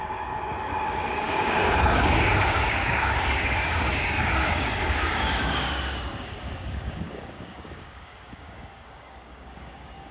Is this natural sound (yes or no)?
no